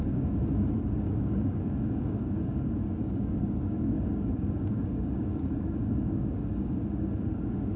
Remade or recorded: remade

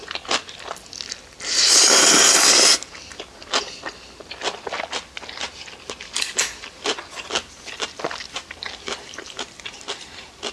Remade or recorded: recorded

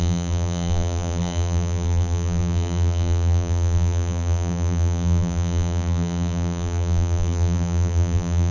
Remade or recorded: remade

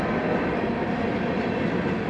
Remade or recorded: recorded